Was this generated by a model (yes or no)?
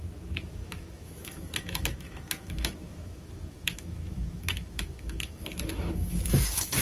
yes